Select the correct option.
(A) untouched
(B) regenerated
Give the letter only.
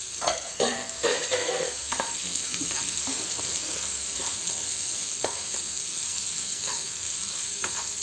B